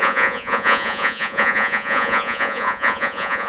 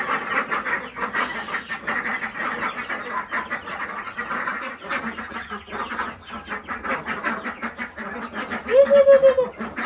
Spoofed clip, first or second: first